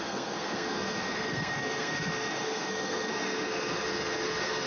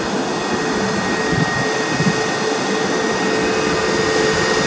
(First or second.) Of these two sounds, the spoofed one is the first